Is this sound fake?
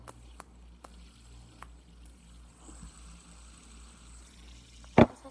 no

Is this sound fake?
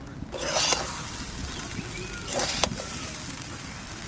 no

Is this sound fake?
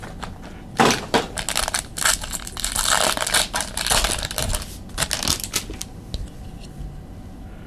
no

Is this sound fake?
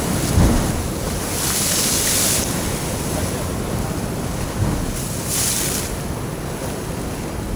no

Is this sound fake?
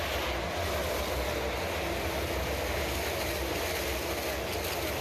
no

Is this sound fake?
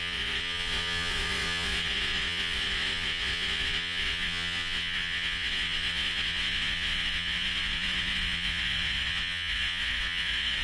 yes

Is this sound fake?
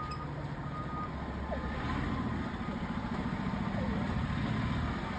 no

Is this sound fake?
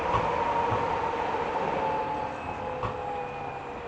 no